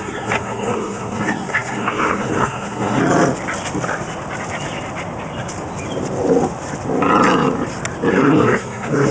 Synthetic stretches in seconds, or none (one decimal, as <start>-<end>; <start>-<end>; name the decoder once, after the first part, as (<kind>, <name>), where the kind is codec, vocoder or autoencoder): 0.0-3.0 (codec, SNAC); 8.1-9.1

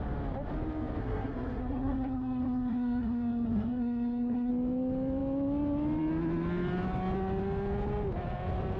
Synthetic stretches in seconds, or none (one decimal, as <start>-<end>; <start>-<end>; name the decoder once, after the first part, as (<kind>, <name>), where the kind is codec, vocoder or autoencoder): 1.0-4.5 (codec, SNAC)